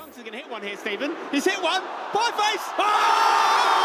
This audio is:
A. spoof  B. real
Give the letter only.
B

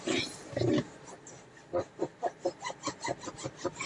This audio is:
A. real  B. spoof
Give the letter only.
A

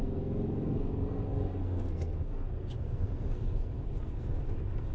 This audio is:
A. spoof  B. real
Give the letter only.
A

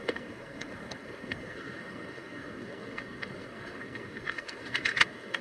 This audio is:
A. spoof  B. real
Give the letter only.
A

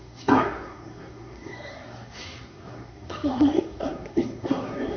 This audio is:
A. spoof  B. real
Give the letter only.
A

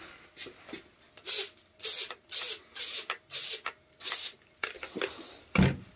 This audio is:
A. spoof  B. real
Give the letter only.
B